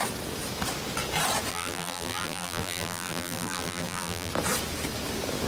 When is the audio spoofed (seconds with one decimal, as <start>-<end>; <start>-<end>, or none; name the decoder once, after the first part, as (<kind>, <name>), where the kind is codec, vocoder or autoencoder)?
1.5-4.3 (vocoder, BigVGAN v2)